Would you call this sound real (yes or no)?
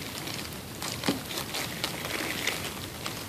yes